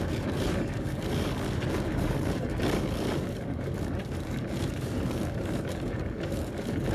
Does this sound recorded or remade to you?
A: remade